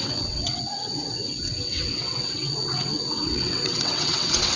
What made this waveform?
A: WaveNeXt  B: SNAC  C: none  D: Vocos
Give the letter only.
A